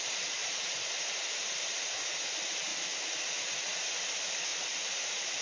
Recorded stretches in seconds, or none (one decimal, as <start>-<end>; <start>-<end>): 0.0-0.4; 1.7-4.5